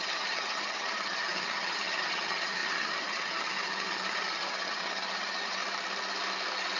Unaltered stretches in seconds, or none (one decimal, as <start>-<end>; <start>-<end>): 5.6-6.8